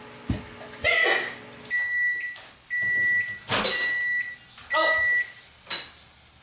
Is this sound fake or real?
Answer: real